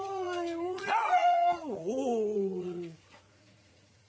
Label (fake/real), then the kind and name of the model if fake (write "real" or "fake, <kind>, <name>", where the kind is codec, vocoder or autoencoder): fake, vocoder, Vocos